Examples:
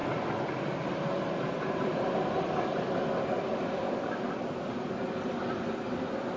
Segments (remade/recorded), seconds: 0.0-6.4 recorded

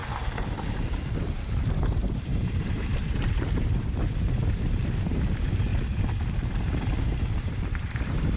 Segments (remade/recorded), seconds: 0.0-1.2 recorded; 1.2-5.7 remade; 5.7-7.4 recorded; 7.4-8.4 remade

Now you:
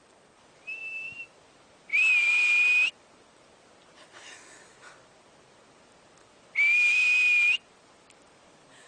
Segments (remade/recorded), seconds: 0.0-0.8 recorded; 0.8-2.3 remade; 2.3-8.9 recorded

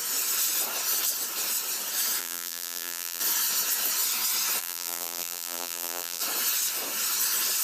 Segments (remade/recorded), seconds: 0.0-2.2 recorded; 2.2-3.2 remade; 3.2-4.6 recorded; 4.6-6.2 remade; 6.2-7.6 recorded

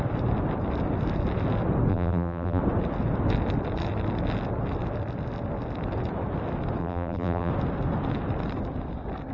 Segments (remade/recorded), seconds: 0.0-1.9 recorded; 1.9-2.6 remade; 2.6-6.8 recorded; 6.8-7.5 remade; 7.5-9.3 recorded

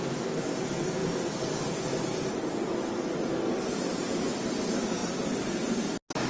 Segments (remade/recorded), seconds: 0.0-5.0 recorded; 5.0-5.8 remade; 5.8-6.3 recorded

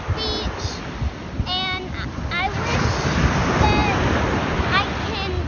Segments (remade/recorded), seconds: 0.0-5.5 recorded